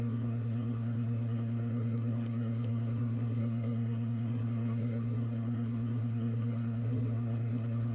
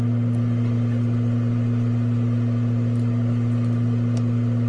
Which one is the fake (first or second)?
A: first